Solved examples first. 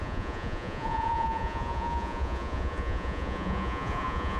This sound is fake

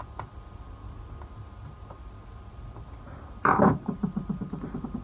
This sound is real